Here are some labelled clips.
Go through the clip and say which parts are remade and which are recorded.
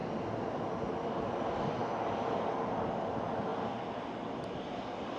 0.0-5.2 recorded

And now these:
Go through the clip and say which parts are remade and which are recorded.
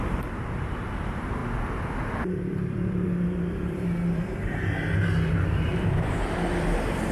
0.0-1.4 remade; 1.4-2.1 recorded; 2.1-7.1 remade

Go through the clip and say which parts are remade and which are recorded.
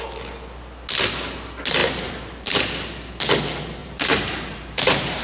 0.0-1.8 recorded; 1.8-2.6 remade; 2.6-3.8 recorded; 3.8-5.2 remade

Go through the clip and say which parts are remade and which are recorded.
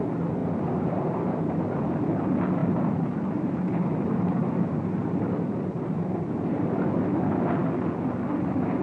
0.0-0.4 recorded; 0.4-1.7 remade; 1.7-2.6 recorded; 2.6-6.7 remade; 6.7-8.8 recorded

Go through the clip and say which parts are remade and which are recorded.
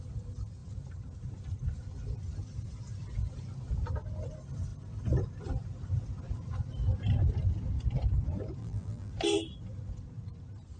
0.0-8.6 recorded; 8.6-9.1 remade; 9.1-10.8 recorded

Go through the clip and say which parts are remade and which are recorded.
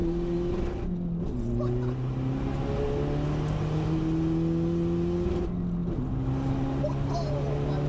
0.0-7.9 recorded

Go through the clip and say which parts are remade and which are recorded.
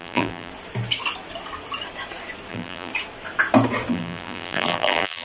0.0-0.5 remade; 0.5-2.5 recorded; 2.5-2.9 remade; 2.9-3.9 recorded; 3.9-5.2 remade